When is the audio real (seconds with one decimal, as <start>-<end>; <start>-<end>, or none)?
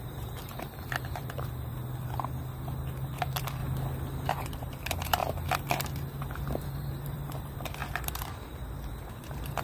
1.7-3.2; 3.6-4.3; 5.2-6.6